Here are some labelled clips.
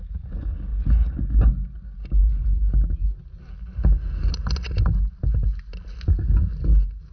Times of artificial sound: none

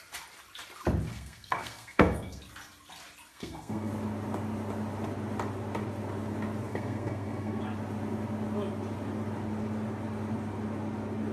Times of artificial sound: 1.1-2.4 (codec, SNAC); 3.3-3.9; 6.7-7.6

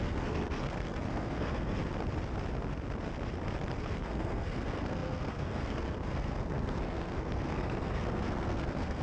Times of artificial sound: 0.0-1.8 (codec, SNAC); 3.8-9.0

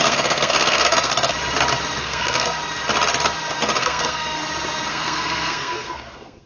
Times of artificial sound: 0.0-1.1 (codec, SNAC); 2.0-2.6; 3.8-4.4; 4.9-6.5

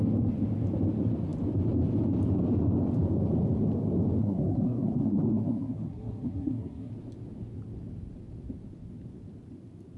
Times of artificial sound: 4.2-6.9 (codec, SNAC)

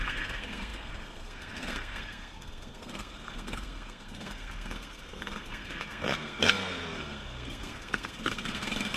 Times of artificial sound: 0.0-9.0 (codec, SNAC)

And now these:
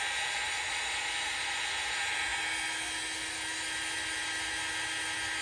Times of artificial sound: none

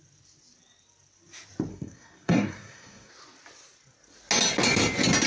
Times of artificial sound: 1.7-3.1 (codec, SNAC)